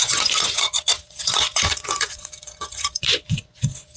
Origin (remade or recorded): remade